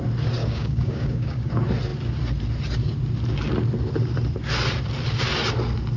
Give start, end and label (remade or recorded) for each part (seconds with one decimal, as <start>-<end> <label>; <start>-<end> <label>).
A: 0.0-0.4 recorded; 0.4-1.5 remade; 1.5-6.0 recorded